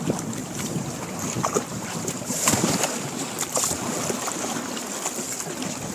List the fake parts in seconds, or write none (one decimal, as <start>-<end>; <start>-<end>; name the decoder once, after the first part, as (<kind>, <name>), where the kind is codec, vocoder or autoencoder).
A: 0.4-3.3 (vocoder, BigVGAN v2)